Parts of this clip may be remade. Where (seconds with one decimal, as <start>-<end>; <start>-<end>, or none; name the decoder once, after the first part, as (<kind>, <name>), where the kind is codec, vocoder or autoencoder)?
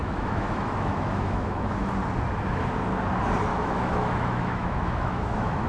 0.0-1.9 (autoencoder, DAC-VAE); 3.5-5.7